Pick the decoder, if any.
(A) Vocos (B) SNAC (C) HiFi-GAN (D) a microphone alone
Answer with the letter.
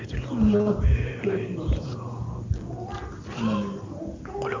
D